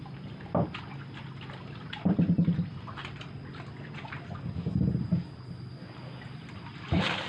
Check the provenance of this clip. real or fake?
real